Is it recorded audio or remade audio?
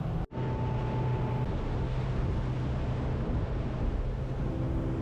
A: recorded